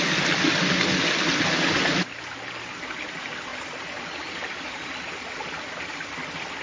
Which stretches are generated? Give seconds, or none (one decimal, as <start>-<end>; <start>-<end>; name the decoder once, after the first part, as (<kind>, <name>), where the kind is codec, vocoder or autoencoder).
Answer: none